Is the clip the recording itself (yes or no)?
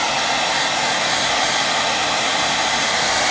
yes